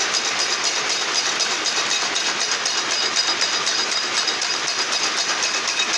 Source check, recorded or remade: recorded